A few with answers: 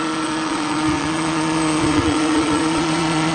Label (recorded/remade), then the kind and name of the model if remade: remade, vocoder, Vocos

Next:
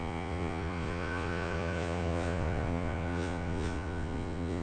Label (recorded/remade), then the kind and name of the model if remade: remade, vocoder, Vocos